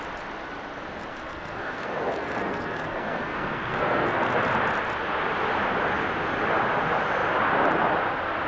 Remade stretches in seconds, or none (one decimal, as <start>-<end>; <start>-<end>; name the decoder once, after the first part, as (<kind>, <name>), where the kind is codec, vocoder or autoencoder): 1.1-4.3 (codec, SNAC)